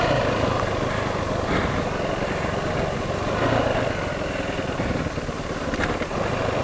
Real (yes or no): yes